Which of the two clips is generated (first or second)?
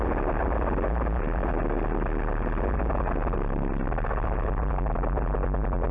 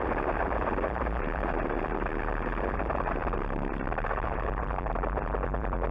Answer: second